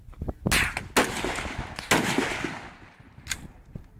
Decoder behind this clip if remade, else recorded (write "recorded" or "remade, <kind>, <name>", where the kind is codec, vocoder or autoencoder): recorded